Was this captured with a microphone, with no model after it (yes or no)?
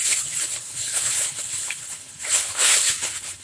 no